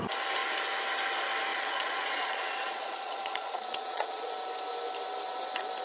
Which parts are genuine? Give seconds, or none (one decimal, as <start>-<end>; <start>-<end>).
0.0-1.5; 4.3-5.8